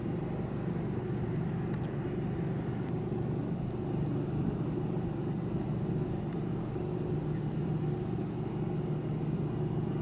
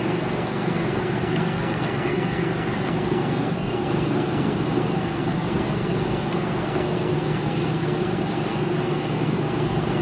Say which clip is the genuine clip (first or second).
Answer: first